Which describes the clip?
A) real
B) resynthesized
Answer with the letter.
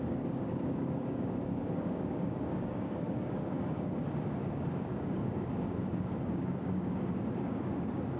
B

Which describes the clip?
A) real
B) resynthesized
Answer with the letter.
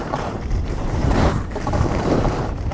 B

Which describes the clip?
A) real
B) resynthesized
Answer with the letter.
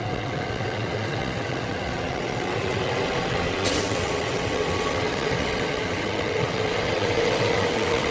B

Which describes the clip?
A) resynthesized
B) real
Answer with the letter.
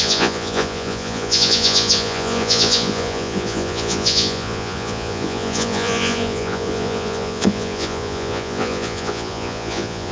A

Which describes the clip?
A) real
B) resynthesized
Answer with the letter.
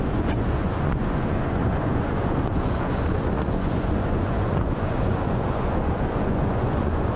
B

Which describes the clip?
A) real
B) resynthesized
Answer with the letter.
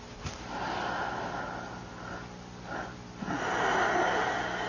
A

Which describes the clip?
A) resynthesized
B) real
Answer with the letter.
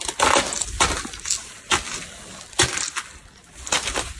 B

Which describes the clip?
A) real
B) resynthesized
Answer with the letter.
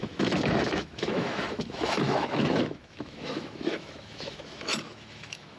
B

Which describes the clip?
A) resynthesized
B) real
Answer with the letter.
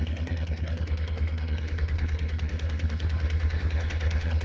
A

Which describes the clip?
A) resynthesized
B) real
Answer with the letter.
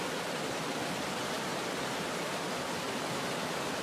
B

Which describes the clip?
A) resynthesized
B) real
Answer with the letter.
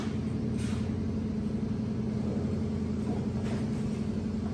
B